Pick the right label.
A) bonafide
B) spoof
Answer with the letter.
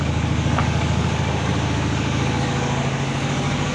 B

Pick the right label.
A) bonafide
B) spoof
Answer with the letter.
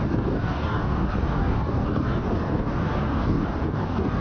B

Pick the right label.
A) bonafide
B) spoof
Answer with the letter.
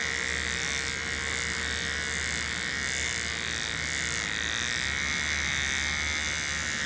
A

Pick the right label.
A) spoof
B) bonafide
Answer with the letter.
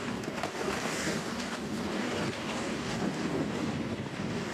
A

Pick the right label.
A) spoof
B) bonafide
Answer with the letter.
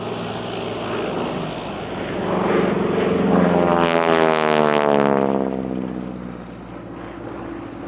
B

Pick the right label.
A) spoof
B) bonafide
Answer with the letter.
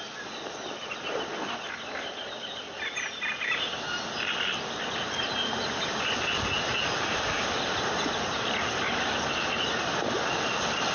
B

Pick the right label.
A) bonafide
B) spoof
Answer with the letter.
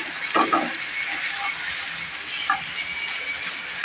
A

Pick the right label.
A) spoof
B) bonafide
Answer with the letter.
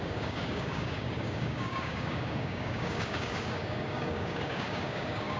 A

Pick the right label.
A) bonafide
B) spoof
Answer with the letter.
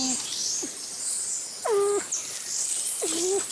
A